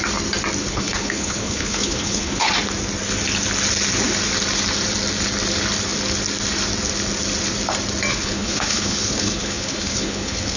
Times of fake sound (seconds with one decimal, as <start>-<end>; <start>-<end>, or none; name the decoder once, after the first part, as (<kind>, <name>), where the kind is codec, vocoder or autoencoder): 0.6-2.5 (codec, HILCodec); 8.1-10.6

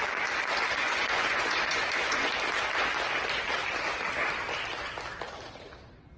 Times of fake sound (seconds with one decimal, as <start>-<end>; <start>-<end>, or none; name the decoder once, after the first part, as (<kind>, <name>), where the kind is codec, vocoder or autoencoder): 0.8-2.3 (vocoder, Vocos)